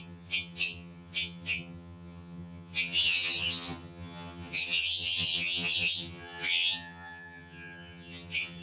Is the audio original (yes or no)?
no